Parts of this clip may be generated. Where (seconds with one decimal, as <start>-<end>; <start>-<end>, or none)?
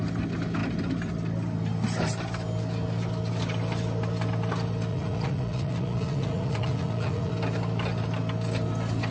4.9-7.3